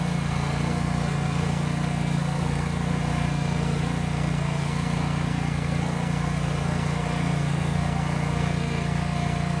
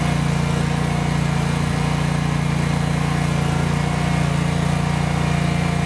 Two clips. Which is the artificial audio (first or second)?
first